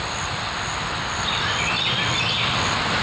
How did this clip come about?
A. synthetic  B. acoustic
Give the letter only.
B